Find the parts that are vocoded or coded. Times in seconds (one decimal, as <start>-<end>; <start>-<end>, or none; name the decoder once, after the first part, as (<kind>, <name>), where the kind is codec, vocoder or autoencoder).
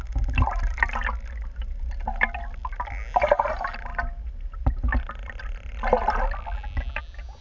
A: none